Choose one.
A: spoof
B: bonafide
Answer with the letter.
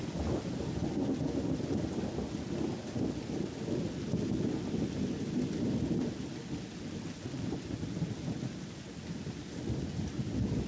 B